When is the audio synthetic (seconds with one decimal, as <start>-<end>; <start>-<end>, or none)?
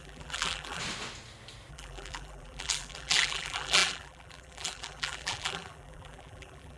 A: 0.0-0.8; 1.7-6.8